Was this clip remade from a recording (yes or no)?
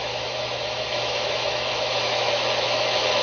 yes